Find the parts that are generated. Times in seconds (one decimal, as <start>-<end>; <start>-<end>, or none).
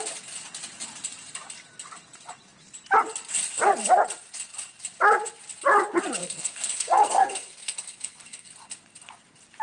6.2-8.5